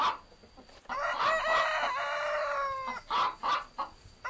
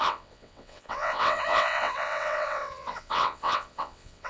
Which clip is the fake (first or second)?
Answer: second